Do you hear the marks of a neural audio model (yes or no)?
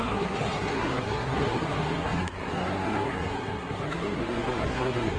yes